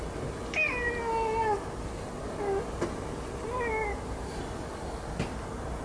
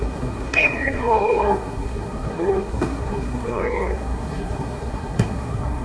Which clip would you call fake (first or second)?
second